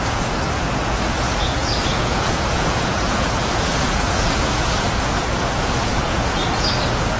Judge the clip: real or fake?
fake